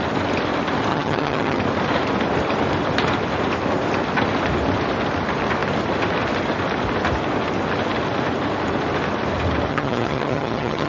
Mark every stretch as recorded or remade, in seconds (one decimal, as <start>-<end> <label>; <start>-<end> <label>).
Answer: 0.0-0.9 recorded; 0.9-1.6 remade; 1.6-9.7 recorded; 9.7-10.9 remade